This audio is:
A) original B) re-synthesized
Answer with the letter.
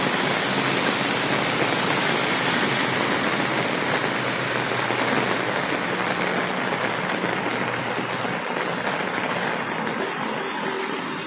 A